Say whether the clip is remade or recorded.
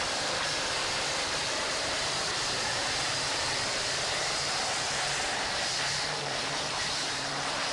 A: remade